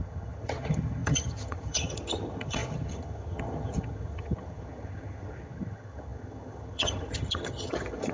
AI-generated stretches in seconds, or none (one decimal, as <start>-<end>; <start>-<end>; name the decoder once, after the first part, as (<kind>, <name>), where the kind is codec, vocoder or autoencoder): 0.0-8.1 (vocoder, HiFi-GAN)